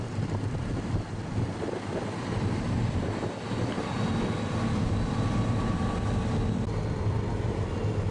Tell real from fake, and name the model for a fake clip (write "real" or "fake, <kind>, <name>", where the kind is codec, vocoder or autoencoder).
real